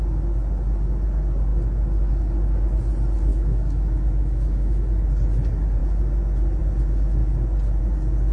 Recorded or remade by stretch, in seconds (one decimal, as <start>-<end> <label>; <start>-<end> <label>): 0.0-3.3 recorded; 3.3-4.8 remade; 4.8-8.3 recorded

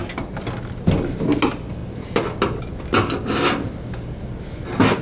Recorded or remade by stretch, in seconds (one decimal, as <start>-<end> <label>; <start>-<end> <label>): 0.0-5.0 recorded

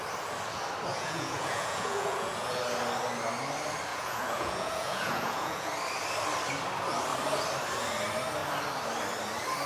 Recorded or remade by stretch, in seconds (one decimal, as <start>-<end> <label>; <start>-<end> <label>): 0.0-0.9 recorded; 0.9-2.6 remade; 2.6-3.9 recorded; 3.9-5.7 remade; 5.7-9.7 recorded

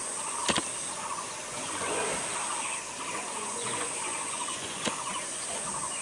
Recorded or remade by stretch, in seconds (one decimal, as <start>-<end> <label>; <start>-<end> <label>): 0.0-0.4 remade; 0.4-0.9 recorded; 0.9-2.0 remade; 2.0-3.1 recorded; 3.1-6.0 remade